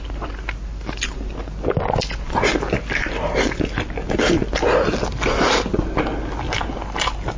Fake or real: real